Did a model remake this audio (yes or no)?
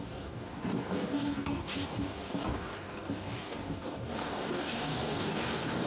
yes